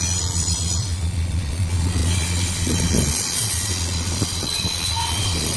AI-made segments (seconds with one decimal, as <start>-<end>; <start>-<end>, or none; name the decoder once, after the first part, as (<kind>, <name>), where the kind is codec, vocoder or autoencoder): 0.0-5.6 (vocoder, Vocos)